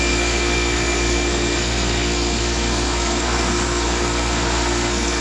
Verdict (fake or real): fake